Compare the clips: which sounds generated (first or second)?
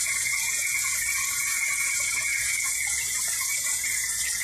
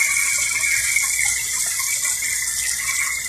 first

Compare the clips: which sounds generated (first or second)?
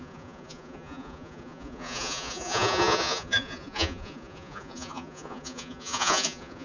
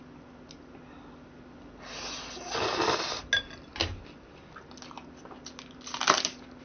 first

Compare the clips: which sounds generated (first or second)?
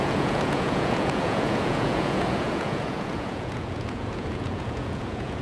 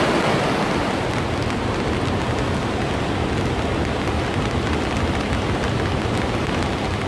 first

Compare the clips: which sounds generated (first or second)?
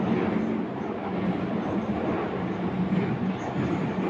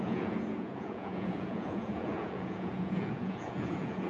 second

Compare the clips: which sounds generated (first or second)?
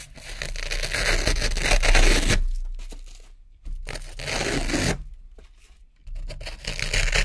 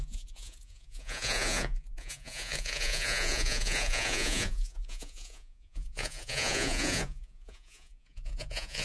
second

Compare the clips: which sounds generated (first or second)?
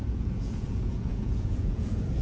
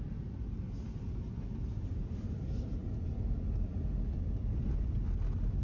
first